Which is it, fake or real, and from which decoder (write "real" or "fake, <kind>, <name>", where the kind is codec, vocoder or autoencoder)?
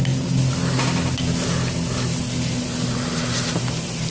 real